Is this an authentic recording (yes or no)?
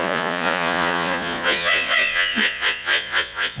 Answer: no